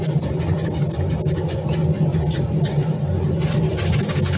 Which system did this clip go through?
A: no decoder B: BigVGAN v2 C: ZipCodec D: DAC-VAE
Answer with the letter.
A